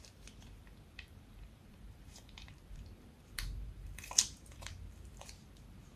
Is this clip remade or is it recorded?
remade